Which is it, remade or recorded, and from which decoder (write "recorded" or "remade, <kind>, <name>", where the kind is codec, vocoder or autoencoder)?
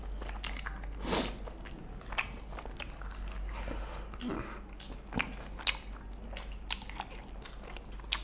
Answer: recorded